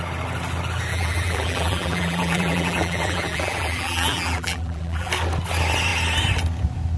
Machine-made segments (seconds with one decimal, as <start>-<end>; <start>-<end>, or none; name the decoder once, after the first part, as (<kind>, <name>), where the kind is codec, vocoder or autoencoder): 0.9-5.1 (vocoder, BigVGAN v2)